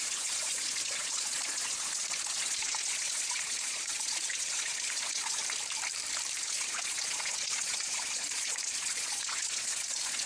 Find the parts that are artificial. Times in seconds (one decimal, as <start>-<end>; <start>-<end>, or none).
0.0-5.4; 6.4-10.3